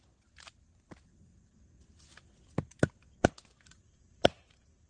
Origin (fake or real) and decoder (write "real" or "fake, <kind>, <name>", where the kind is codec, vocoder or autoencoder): real